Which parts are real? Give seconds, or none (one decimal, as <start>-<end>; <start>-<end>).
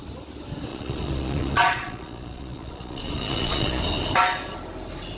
0.0-0.7; 3.8-5.2